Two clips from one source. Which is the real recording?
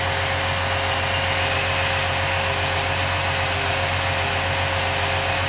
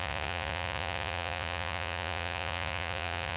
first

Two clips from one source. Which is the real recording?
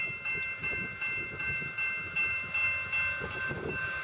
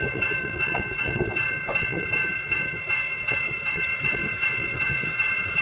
first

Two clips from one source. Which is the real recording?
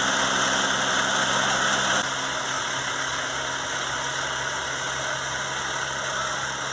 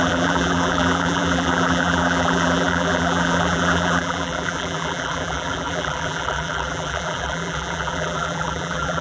first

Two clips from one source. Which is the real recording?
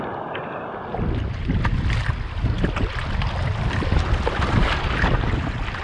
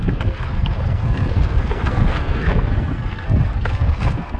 first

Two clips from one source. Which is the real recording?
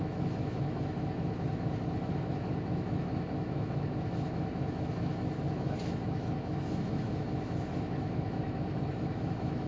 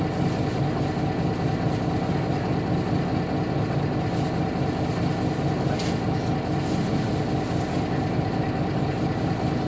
second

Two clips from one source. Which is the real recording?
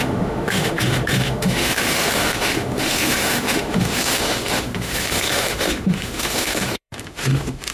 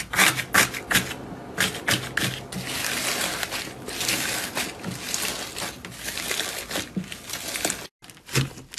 second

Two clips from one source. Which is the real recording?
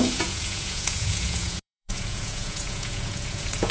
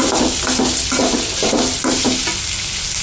second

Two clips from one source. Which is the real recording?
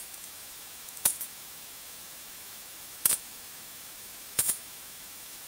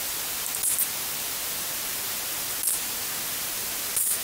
second